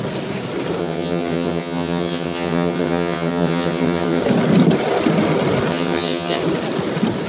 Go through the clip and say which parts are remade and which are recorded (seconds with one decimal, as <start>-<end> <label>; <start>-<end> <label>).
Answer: 0.0-0.8 recorded; 0.8-4.2 remade; 4.2-5.7 recorded; 5.7-6.4 remade; 6.4-7.3 recorded